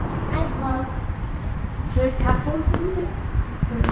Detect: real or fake fake